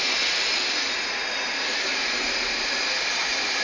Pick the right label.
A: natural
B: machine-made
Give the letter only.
A